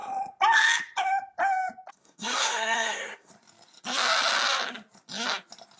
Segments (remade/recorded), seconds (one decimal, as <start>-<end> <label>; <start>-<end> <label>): 0.0-1.9 recorded; 1.9-3.3 remade; 3.3-5.8 recorded